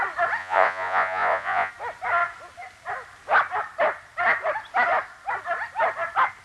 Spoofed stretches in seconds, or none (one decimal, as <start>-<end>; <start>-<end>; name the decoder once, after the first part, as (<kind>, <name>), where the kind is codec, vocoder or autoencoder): 0.4-1.7 (vocoder, Vocos)